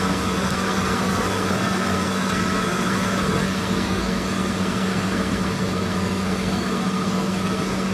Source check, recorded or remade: remade